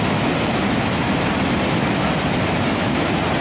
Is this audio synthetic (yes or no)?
no